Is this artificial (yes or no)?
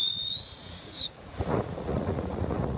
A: yes